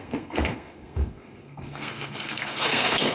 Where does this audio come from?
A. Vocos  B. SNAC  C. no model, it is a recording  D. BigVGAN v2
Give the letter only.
B